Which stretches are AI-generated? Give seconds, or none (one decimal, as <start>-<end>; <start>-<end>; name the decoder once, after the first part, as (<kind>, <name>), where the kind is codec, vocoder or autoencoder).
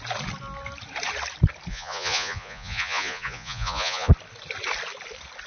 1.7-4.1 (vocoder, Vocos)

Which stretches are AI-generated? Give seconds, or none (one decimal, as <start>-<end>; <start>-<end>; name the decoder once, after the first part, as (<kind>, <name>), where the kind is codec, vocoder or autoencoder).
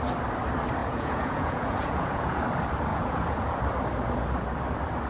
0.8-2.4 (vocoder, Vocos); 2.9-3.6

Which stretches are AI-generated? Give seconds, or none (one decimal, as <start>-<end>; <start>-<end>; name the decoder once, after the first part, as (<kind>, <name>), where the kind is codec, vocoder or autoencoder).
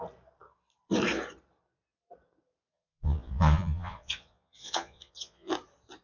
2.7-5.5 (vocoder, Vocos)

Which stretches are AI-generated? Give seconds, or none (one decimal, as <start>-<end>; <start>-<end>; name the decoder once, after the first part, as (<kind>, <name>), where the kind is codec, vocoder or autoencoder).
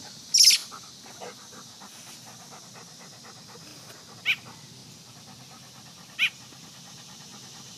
none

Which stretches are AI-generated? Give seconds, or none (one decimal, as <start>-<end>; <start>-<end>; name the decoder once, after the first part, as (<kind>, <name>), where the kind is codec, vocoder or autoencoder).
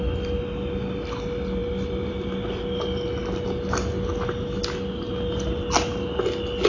none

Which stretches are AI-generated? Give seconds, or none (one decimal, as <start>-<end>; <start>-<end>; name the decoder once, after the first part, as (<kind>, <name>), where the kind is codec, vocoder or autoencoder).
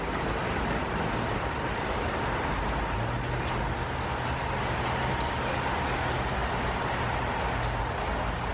none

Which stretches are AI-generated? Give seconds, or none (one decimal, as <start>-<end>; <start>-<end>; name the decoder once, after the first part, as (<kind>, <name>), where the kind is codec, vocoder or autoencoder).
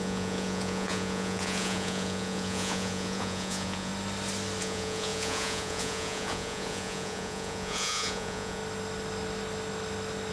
0.0-3.9 (vocoder, Vocos); 4.6-8.6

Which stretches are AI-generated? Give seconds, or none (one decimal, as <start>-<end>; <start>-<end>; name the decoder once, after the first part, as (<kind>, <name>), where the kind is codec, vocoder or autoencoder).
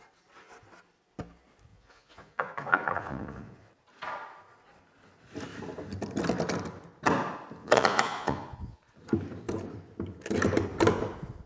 1.7-3.7 (vocoder, Vocos); 7.6-8.8